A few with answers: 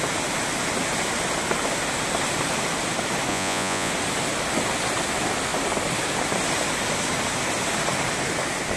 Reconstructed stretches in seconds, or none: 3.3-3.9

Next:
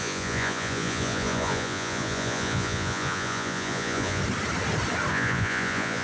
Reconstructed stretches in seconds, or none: 0.0-4.2; 5.1-6.0

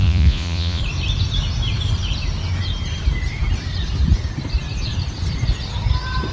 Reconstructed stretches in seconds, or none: 0.0-0.8

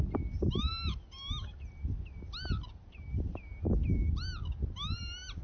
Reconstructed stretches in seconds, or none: none